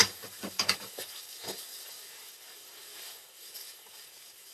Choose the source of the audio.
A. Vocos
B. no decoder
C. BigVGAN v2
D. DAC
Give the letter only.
D